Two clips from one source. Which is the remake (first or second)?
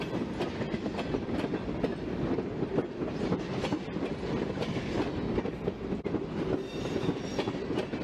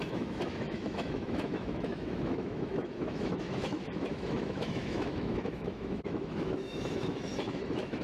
second